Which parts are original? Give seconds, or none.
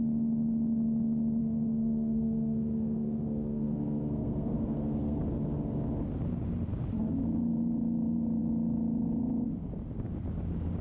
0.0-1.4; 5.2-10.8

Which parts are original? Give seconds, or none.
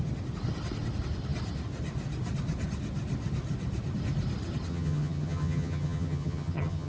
0.0-4.7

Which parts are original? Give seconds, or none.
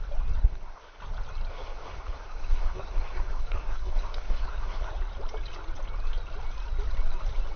0.0-0.4; 1.0-1.5; 4.9-7.6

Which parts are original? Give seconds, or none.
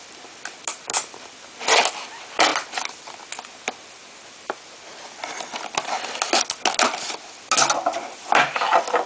0.0-9.1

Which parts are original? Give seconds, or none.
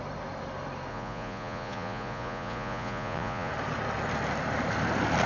0.0-0.9; 3.5-5.3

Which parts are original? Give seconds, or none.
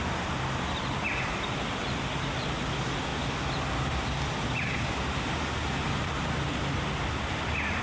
0.0-3.1; 4.4-7.8